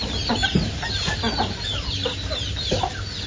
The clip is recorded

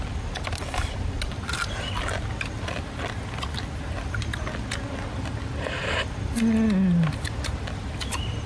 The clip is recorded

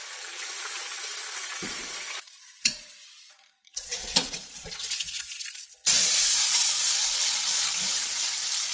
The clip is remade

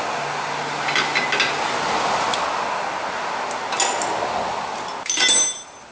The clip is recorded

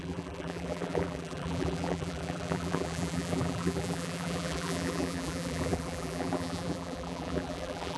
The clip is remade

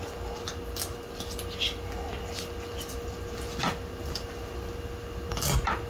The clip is recorded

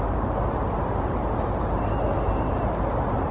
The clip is recorded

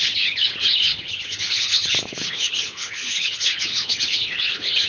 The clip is remade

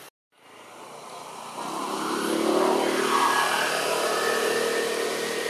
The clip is recorded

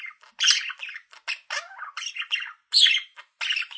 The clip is recorded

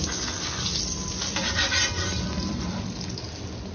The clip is recorded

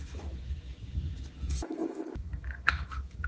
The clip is remade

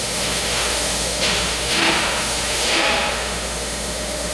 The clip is remade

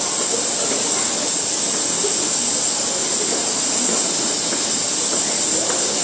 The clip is recorded